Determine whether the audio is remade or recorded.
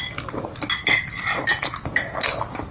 recorded